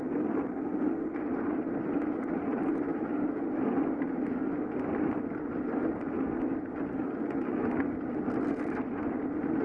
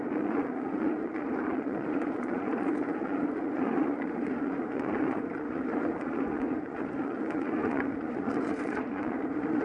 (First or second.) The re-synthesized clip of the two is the second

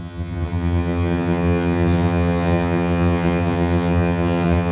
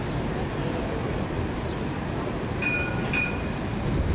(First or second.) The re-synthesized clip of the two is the first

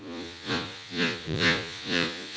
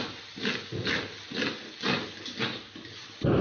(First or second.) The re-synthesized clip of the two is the first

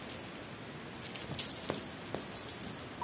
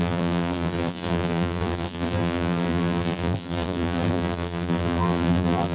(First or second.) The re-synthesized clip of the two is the second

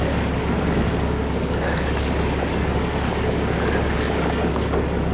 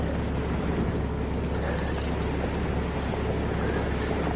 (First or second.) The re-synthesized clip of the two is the first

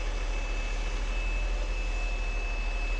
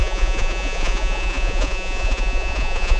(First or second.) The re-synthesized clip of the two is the second